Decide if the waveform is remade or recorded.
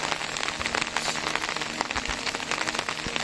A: recorded